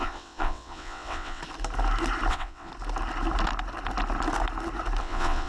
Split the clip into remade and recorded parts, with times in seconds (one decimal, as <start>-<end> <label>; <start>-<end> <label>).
0.0-1.4 remade; 1.4-2.3 recorded; 2.3-2.7 remade; 2.7-5.0 recorded; 5.0-5.5 remade